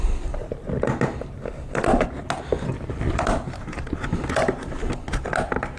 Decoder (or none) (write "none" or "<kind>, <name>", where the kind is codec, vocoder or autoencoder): none